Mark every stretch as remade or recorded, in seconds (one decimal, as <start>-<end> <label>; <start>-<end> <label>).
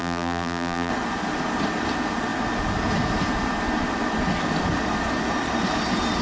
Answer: 0.0-0.9 remade; 0.9-6.2 recorded